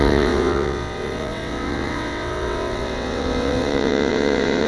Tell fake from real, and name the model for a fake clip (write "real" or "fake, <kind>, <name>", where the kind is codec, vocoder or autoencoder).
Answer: fake, vocoder, WaveNeXt